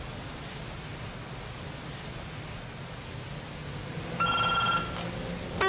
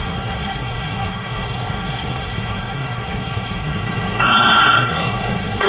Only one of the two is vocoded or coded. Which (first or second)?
second